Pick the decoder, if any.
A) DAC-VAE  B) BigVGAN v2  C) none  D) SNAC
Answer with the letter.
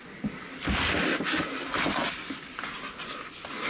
C